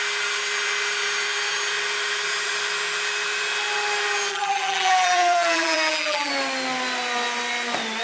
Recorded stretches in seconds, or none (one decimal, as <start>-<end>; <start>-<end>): 0.0-4.3; 6.3-8.0